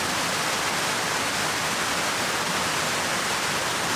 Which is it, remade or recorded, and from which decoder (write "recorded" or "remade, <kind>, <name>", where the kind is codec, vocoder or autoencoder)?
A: recorded